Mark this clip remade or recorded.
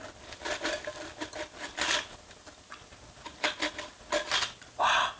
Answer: recorded